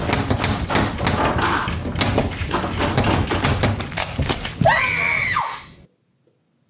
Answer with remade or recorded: recorded